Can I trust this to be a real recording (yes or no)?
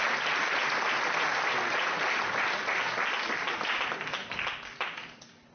yes